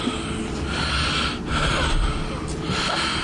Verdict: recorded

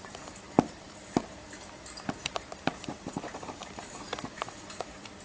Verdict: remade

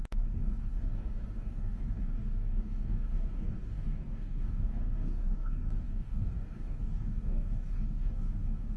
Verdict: remade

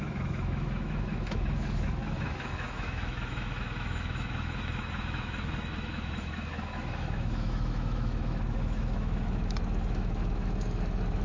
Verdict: remade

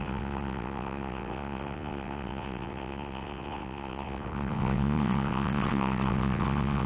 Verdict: remade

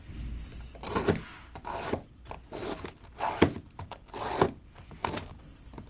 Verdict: recorded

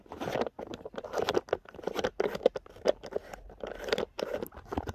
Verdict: recorded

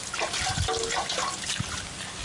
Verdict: recorded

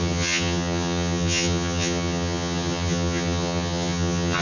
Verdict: remade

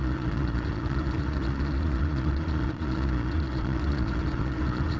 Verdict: remade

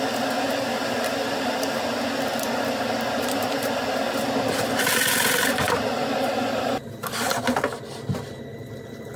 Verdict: recorded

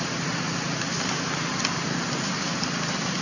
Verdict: recorded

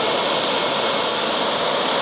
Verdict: recorded